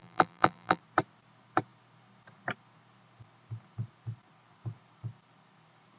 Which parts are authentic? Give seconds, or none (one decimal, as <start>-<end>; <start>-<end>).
0.8-6.0